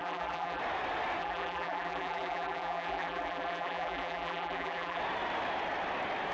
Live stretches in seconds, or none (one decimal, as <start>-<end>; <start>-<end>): 0.6-1.2; 5.0-6.3